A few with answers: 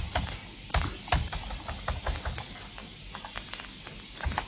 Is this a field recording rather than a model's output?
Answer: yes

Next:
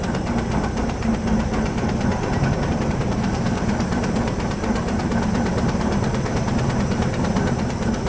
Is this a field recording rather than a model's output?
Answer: no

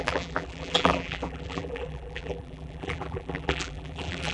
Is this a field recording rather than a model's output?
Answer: no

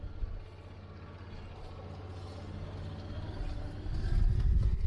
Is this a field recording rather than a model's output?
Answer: yes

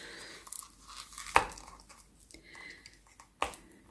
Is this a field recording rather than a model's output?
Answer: yes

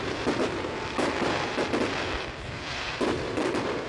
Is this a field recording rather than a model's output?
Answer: no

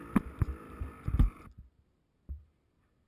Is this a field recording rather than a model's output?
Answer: no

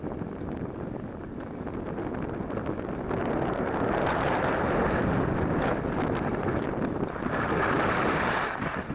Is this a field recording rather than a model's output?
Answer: yes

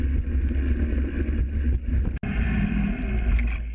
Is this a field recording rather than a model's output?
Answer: yes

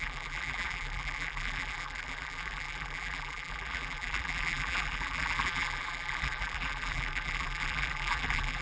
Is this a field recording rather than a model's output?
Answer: no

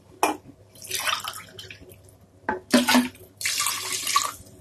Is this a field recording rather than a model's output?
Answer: yes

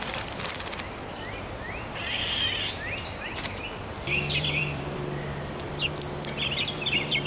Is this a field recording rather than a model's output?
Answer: no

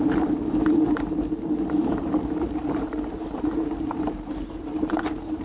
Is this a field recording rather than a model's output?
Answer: no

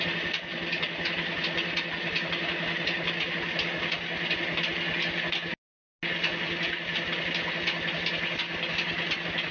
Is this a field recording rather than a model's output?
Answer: yes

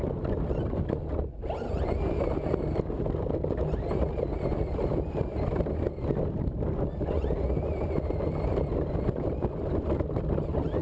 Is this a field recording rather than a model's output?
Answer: no